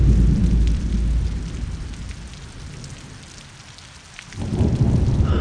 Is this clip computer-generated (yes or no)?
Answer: no